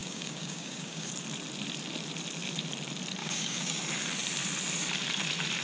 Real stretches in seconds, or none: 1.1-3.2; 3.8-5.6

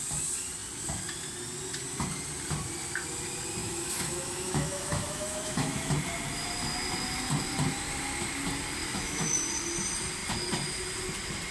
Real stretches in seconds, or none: 0.0-3.6; 5.9-8.8; 9.5-11.5